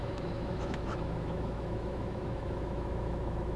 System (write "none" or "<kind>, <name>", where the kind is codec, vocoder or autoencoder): autoencoder, DAC-VAE